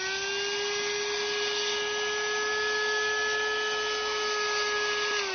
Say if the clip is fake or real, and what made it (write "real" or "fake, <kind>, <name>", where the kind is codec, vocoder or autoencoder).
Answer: real